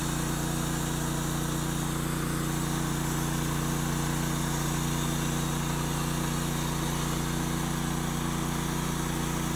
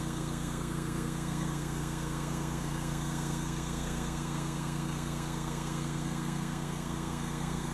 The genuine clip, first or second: first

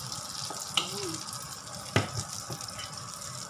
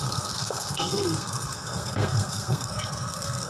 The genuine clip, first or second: first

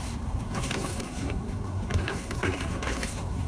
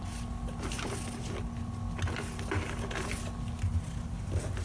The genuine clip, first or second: second